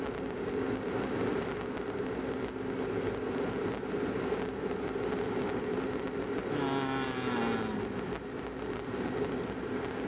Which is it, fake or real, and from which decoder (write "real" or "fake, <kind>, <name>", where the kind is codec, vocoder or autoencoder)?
real